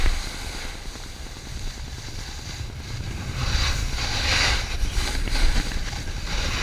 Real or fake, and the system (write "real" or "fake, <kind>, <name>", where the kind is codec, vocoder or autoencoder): real